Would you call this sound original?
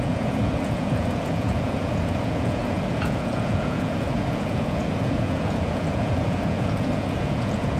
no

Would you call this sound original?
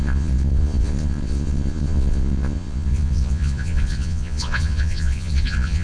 no